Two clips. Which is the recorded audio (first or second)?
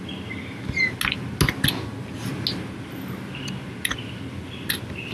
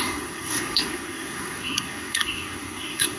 first